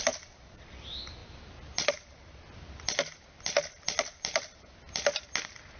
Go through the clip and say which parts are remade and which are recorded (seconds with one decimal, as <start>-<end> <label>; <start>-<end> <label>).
0.0-5.8 recorded